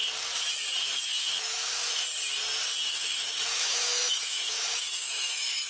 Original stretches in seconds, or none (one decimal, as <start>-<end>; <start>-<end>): 0.0-0.8; 2.0-2.8